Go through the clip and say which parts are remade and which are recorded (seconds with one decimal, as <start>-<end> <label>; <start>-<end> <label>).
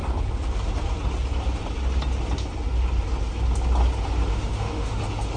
0.0-4.3 recorded; 4.3-5.0 remade; 5.0-5.4 recorded